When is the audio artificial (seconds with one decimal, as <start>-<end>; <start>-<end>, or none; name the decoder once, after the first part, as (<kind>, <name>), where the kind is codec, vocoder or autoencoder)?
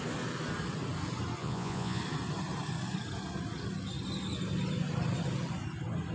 1.4-2.0 (vocoder, Vocos)